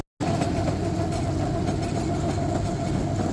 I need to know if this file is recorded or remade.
recorded